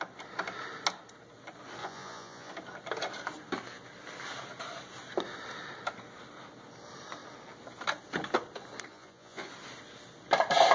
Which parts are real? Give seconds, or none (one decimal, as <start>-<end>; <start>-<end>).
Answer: 0.0-1.8; 2.5-8.9; 9.5-10.7